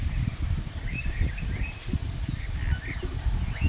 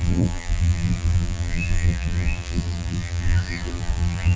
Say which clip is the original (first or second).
first